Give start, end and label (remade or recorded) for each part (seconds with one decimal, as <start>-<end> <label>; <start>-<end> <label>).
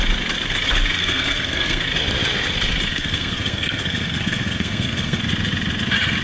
0.0-1.0 recorded; 1.0-1.8 remade; 1.8-2.9 recorded; 2.9-5.2 remade; 5.2-6.2 recorded